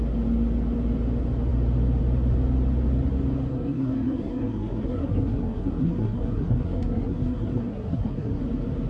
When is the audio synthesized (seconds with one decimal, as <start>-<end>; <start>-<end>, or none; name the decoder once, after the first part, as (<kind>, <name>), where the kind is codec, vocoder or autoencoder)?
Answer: 3.5-8.4 (codec, SNAC)

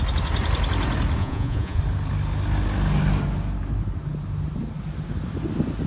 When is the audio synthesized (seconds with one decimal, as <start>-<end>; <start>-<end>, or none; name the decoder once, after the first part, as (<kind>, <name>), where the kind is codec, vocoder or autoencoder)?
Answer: 1.2-1.8 (vocoder, Vocos)

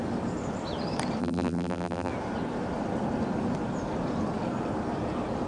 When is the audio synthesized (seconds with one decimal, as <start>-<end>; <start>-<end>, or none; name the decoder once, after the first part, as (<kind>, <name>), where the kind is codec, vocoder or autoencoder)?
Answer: 1.2-2.1 (vocoder, BigVGAN v2)

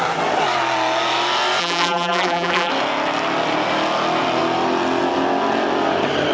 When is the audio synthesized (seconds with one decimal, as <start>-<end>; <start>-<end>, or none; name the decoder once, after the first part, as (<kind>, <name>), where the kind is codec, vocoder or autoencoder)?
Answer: 1.6-2.7 (vocoder, BigVGAN v2)